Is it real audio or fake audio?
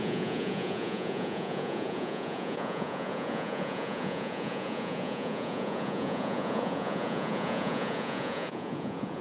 fake